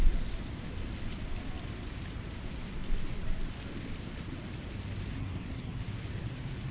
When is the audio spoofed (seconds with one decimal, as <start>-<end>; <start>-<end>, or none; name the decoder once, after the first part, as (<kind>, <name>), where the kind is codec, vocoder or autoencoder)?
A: 5.1-5.8 (codec, SNAC)